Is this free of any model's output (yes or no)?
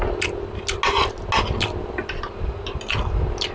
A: yes